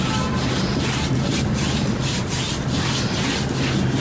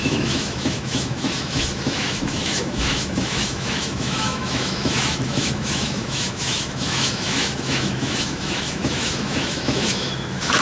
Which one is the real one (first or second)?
first